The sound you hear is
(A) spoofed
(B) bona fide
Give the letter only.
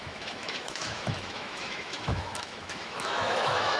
A